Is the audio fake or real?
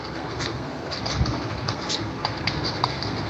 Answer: fake